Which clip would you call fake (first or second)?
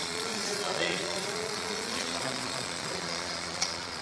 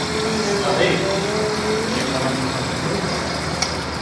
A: first